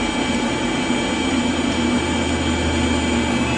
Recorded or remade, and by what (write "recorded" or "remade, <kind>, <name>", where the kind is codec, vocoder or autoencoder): recorded